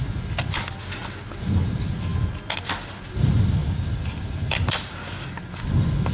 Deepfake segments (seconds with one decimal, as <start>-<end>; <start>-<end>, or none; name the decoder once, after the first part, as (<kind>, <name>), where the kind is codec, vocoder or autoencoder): 3.6-4.9 (vocoder, BigVGAN v2)